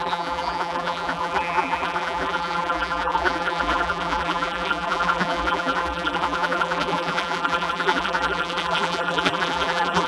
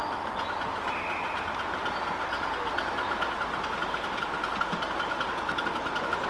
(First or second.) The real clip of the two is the second